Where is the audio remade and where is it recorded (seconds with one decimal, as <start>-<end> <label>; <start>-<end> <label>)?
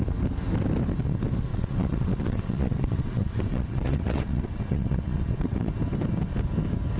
0.0-1.5 recorded; 1.5-5.7 remade; 5.7-7.0 recorded